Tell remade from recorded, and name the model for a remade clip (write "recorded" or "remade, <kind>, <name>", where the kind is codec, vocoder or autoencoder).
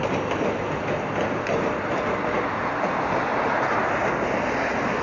recorded